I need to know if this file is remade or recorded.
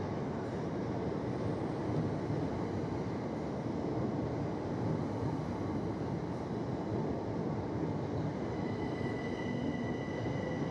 recorded